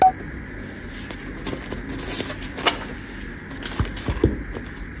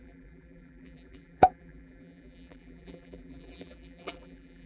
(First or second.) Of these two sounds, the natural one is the first